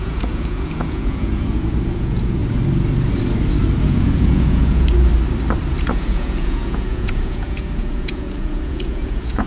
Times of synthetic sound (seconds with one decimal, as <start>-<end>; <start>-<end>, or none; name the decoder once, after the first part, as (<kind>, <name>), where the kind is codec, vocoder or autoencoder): 0.0-2.4 (vocoder, Vocos); 3.8-5.1; 5.7-9.5